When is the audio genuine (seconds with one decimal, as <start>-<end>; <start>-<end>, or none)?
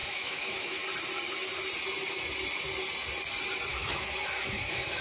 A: 0.8-3.7